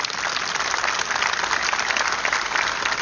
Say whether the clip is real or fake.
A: real